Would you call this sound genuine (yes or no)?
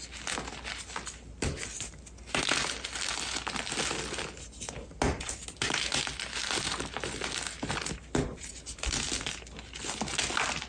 yes